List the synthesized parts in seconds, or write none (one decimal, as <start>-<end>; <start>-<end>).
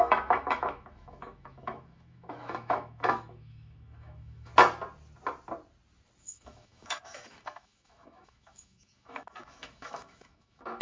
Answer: 0.0-4.5; 6.2-10.8